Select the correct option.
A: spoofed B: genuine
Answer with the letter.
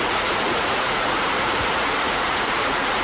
A